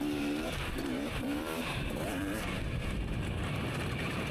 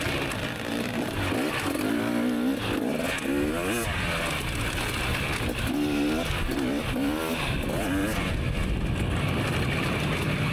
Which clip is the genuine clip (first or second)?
second